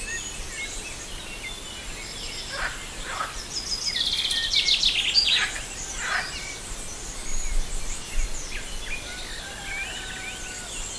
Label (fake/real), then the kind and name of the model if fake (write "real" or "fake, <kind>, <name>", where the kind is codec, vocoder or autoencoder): real